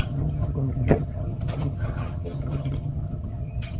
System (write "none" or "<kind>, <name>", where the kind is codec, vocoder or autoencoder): vocoder, HiFi-GAN